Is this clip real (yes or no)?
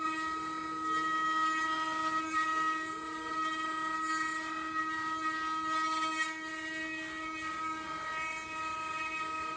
yes